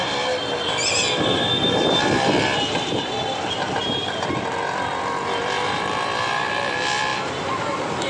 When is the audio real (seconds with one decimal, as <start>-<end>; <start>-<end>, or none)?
none